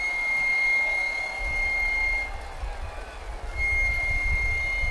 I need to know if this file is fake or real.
real